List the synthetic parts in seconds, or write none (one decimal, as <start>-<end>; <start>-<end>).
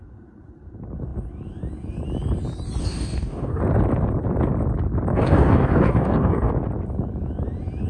2.8-3.6; 5.1-6.5